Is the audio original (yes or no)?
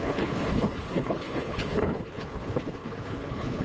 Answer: no